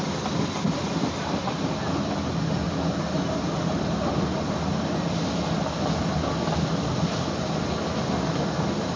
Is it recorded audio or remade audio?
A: recorded